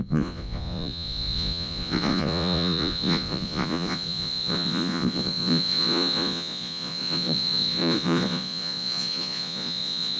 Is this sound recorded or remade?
remade